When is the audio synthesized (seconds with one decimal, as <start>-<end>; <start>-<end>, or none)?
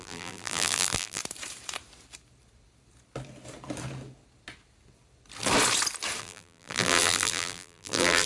0.0-1.2; 6.2-8.3